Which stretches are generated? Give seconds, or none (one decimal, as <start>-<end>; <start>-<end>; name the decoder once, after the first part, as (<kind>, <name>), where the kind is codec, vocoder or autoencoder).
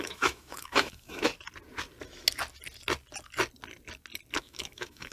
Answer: 0.0-1.3 (autoencoder, DAC-VAE); 4.4-5.1